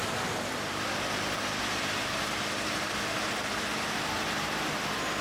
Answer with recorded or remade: recorded